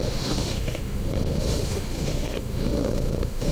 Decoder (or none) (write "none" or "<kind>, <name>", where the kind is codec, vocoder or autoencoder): autoencoder, DAC-VAE